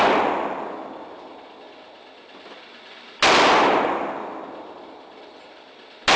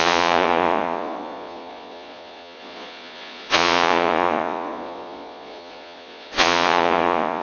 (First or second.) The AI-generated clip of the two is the second